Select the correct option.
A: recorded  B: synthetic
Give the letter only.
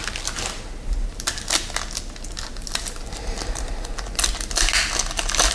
A